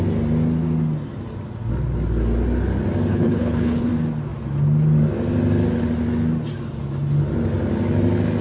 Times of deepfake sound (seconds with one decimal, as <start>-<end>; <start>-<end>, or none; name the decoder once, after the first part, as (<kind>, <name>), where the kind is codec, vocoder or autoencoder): 3.1-3.9 (codec, HILCodec)